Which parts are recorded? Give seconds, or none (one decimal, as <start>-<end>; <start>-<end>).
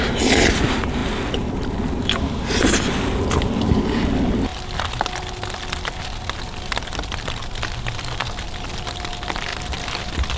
0.0-10.4